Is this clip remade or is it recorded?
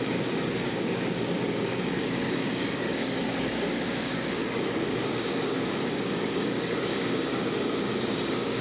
remade